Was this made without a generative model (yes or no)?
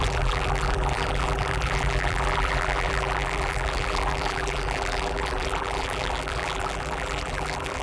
no